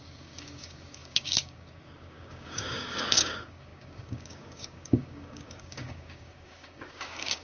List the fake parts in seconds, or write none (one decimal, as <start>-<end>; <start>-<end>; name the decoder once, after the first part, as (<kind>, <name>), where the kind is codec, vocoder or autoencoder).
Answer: 0.0-7.4 (codec, DAC)